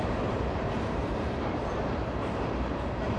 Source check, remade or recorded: remade